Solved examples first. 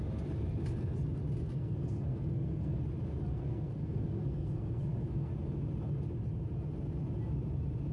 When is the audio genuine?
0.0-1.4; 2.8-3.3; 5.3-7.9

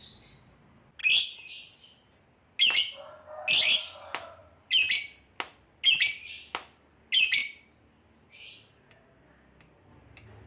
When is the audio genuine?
0.0-10.5

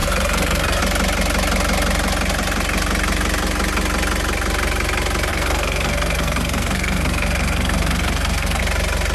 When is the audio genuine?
0.8-5.3; 8.6-9.1

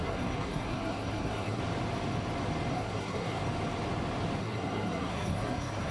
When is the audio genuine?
1.6-2.7; 3.4-4.4

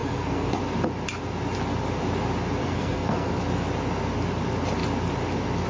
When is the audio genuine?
0.6-2.6; 3.3-5.7

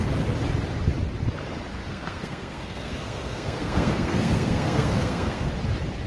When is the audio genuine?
0.0-1.8; 5.5-6.1

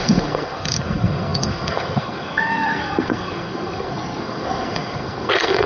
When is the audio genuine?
none